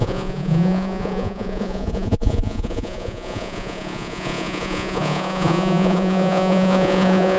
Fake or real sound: fake